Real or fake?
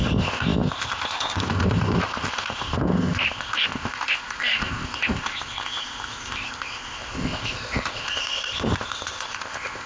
fake